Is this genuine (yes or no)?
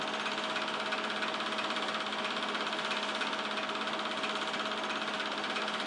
yes